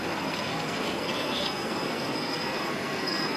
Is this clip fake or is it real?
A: fake